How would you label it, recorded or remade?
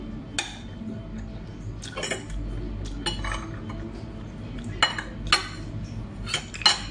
recorded